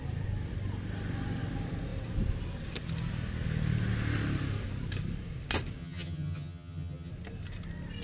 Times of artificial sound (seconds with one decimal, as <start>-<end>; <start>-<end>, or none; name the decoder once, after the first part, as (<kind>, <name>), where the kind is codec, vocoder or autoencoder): 5.8-7.1 (vocoder, HiFi-GAN)